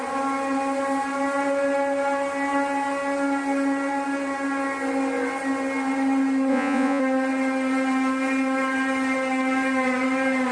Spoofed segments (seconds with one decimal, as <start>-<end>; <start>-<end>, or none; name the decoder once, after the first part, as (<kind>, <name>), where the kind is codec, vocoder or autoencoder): 6.5-7.0 (vocoder, Vocos)